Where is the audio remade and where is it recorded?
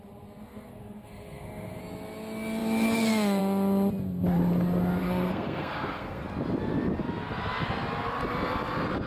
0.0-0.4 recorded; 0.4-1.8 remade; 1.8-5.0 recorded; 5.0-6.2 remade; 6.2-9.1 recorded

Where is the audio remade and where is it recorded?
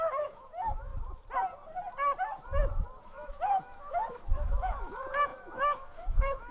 0.0-0.9 remade; 0.9-3.0 recorded; 3.0-6.5 remade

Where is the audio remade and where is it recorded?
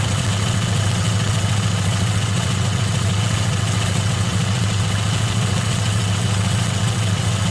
0.0-7.5 remade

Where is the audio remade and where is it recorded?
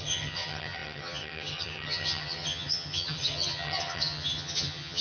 0.0-5.0 remade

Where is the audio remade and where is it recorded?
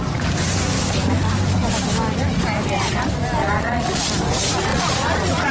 0.0-3.4 recorded; 3.4-4.0 remade; 4.0-4.7 recorded; 4.7-5.5 remade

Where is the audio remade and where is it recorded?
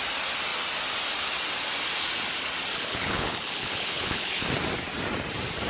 0.0-2.7 recorded; 2.7-4.5 remade; 4.5-5.7 recorded